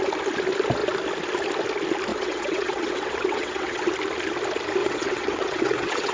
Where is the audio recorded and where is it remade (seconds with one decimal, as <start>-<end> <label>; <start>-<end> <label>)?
0.0-2.1 recorded; 2.1-3.9 remade; 3.9-4.8 recorded; 4.8-6.1 remade

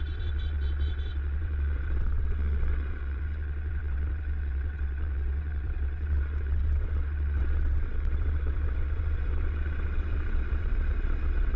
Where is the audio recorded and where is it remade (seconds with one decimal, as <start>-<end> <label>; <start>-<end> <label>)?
0.0-11.6 remade